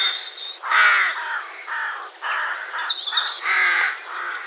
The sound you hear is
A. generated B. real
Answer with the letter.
B